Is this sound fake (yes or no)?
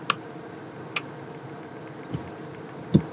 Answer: no